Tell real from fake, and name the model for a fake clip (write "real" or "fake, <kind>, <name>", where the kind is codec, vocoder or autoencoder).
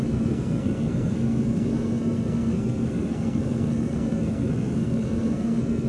fake, codec, SNAC